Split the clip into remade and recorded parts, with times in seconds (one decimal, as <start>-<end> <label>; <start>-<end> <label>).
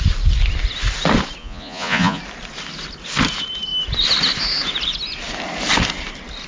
0.0-1.4 recorded; 1.4-2.2 remade; 2.2-6.5 recorded